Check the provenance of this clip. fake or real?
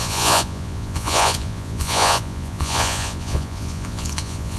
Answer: fake